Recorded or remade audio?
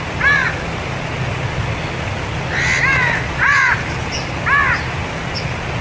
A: recorded